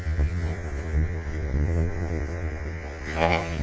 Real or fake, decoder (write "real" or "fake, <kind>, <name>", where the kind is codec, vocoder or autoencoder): fake, vocoder, Vocos